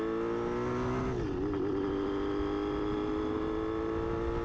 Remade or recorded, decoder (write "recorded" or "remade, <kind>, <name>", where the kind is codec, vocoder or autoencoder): recorded